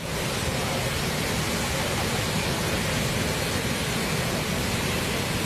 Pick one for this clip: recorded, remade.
recorded